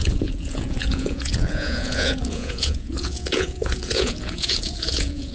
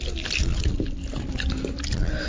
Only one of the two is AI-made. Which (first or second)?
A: first